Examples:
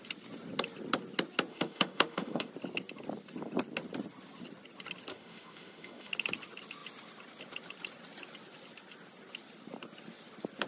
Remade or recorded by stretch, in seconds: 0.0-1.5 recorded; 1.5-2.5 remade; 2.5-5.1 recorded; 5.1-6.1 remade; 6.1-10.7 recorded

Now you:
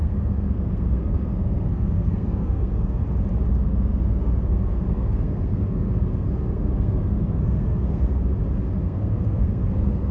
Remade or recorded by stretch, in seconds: 0.0-3.0 remade; 3.0-3.5 recorded; 3.5-8.3 remade; 8.3-8.8 recorded; 8.8-10.1 remade

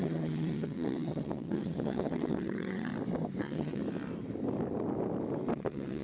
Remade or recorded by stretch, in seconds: 0.0-2.9 remade; 2.9-3.4 recorded; 3.4-3.8 remade; 3.8-5.5 recorded; 5.5-6.0 remade